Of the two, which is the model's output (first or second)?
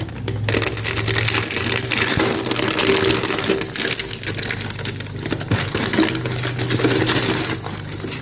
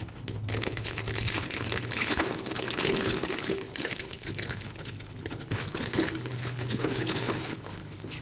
second